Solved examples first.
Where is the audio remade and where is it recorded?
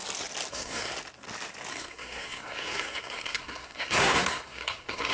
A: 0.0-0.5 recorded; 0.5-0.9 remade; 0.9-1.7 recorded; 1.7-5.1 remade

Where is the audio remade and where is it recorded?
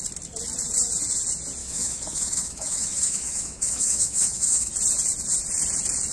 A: 0.0-1.6 recorded; 1.6-4.7 remade; 4.7-6.1 recorded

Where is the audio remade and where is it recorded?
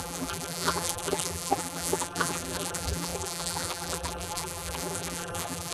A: 0.0-5.7 remade